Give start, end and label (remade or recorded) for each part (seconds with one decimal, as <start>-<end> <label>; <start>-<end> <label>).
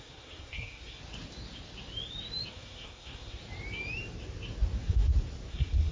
0.0-1.0 remade; 1.0-2.5 recorded; 2.5-3.4 remade; 3.4-5.5 recorded; 5.5-5.9 remade